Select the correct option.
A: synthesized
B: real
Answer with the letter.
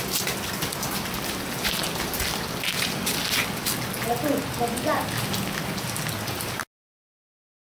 B